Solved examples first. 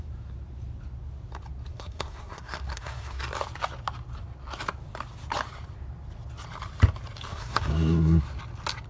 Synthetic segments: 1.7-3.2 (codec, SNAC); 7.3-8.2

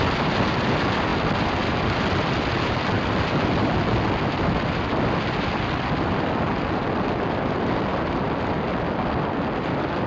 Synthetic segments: none